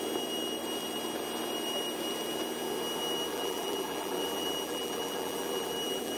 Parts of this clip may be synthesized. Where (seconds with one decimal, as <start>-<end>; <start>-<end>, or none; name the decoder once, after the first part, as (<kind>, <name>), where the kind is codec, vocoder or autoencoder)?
3.3-6.2 (vocoder, BigVGAN v2)